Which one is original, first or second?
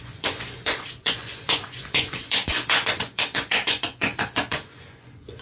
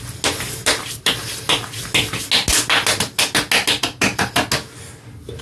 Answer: second